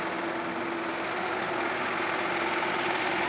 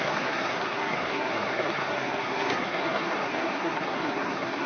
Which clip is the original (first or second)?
first